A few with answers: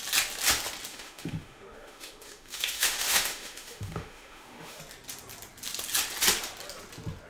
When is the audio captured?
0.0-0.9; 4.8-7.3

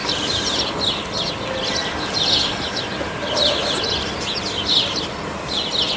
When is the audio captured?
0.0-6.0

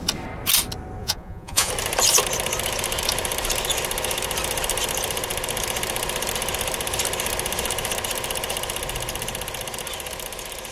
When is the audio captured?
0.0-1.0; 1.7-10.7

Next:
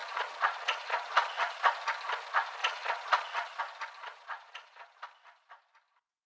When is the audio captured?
1.7-2.6; 3.6-4.0; 5.0-6.3